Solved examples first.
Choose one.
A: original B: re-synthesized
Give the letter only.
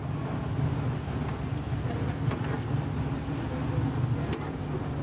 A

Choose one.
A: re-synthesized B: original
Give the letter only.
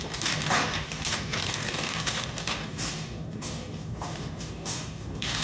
A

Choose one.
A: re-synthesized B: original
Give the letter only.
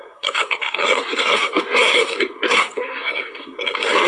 A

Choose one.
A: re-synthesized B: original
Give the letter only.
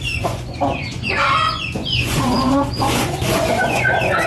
A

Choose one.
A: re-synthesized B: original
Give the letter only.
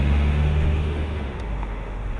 A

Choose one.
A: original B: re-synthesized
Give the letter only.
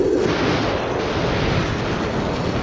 A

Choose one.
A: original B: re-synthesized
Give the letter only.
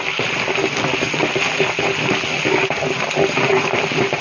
A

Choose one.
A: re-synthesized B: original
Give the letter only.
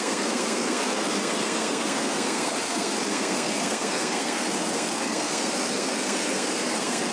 A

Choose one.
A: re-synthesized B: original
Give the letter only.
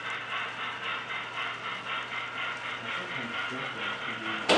B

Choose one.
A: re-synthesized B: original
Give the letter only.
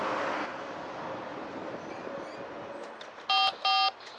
B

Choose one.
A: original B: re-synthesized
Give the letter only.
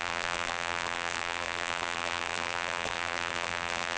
B